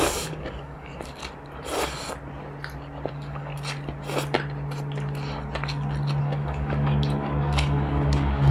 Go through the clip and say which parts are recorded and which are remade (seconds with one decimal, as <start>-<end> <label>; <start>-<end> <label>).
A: 0.0-1.2 remade; 1.2-3.1 recorded; 3.1-3.5 remade; 3.5-6.2 recorded; 6.2-8.5 remade